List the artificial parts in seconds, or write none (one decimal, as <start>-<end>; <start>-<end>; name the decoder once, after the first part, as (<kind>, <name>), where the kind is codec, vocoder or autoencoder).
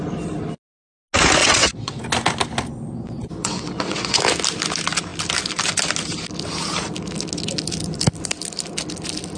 1.4-2.0 (vocoder, WaveNeXt); 3.4-4.2